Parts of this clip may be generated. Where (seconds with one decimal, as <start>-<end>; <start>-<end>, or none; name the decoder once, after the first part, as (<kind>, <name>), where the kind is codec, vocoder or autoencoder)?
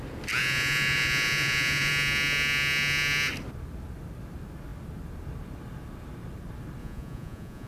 0.4-1.9 (vocoder, Vocos); 6.8-7.7